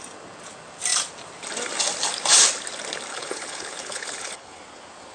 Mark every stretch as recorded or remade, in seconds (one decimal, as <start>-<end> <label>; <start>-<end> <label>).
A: 0.0-3.1 recorded; 3.1-4.6 remade; 4.6-5.1 recorded